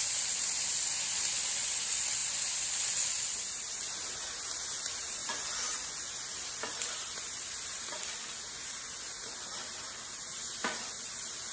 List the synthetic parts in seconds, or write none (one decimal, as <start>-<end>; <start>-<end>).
0.0-2.2; 3.1-5.2; 6.6-11.5